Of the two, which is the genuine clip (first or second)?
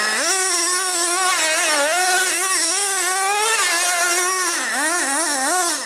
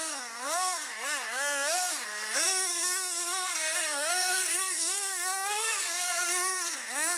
first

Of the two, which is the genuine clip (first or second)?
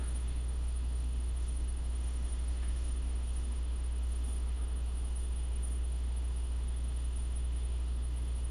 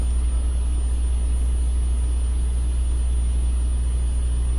second